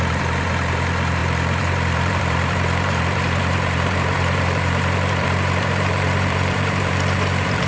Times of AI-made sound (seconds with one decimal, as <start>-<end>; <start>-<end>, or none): 0.0-7.7